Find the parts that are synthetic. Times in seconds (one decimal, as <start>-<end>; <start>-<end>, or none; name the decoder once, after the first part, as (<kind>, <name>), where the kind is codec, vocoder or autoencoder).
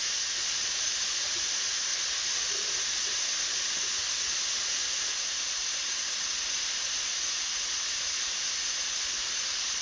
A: none